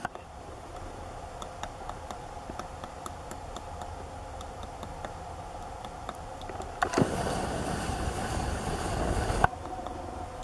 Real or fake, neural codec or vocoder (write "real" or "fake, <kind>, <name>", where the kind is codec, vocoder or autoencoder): real